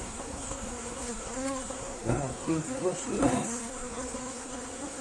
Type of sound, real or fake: fake